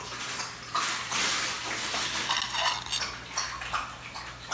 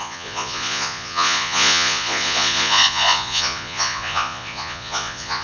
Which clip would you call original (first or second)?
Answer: first